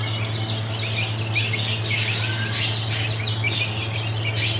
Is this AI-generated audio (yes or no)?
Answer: yes